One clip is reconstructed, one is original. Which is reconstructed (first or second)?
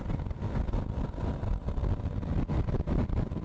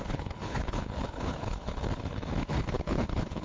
second